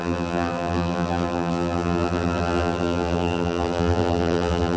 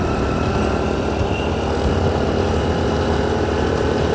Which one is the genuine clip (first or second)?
second